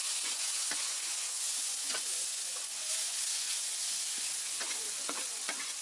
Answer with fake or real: fake